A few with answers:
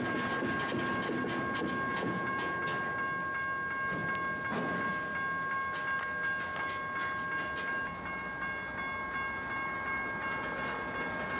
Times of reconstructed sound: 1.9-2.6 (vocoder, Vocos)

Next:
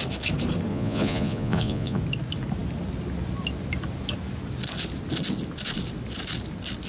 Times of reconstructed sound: 0.7-2.0 (vocoder, Vocos)

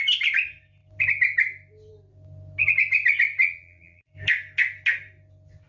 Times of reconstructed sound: 3.4-4.1 (vocoder, Vocos)

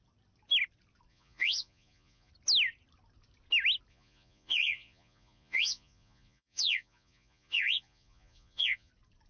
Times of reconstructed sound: 1.1-2.3 (vocoder, Vocos); 3.9-8.9

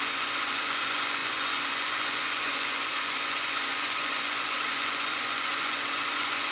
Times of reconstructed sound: 0.0-6.5 (vocoder, Vocos)

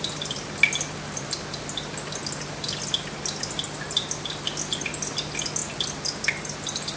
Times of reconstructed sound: none

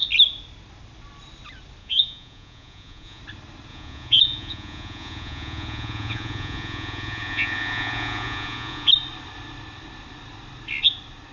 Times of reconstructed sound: 1.8-3.2 (vocoder, Vocos); 3.7-8.9